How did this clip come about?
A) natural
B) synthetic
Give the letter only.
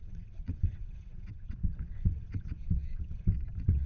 B